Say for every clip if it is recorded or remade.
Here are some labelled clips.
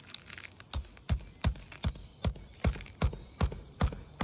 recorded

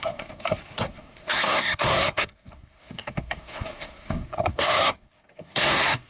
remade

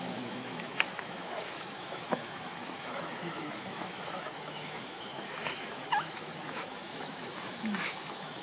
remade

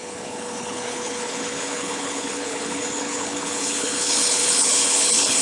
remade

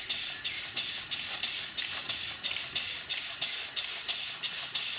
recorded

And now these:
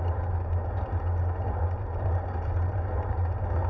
recorded